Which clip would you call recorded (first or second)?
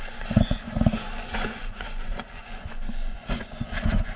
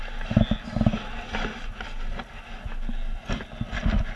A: second